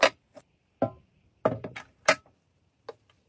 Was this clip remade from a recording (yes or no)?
no